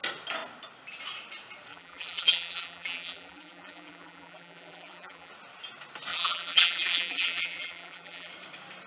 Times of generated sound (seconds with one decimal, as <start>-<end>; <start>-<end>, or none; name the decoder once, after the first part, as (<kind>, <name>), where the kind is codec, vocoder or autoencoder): 1.7-5.3 (vocoder, BigVGAN v2); 6.1-8.3